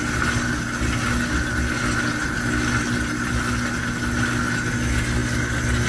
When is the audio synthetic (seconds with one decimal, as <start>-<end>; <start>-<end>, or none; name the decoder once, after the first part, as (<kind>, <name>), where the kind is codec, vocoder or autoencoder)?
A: none